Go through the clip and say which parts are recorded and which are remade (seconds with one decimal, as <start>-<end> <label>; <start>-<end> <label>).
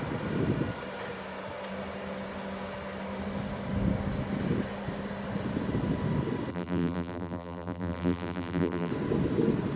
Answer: 0.0-6.5 recorded; 6.5-8.9 remade; 8.9-9.8 recorded